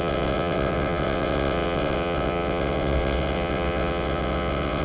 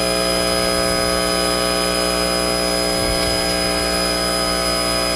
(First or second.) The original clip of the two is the second